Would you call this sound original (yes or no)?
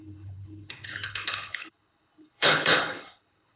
no